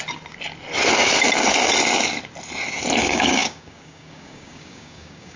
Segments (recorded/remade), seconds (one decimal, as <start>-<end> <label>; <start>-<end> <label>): 0.0-3.0 recorded; 3.0-5.4 remade